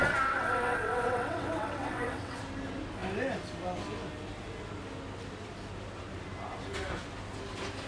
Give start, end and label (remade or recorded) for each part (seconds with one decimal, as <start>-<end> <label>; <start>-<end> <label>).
0.0-2.4 remade; 2.4-7.9 recorded